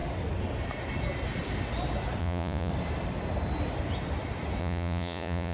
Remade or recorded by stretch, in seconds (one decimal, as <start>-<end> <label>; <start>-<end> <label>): 0.0-2.2 recorded; 2.2-2.7 remade; 2.7-4.6 recorded; 4.6-5.5 remade